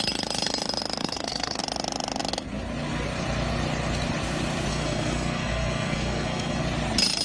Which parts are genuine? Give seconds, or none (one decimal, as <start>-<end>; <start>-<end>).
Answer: 0.0-1.0; 1.6-4.7; 6.6-7.2